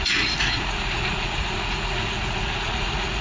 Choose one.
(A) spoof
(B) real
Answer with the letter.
A